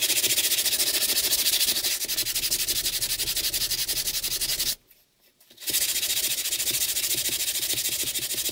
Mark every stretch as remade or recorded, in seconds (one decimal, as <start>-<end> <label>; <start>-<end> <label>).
0.0-8.5 recorded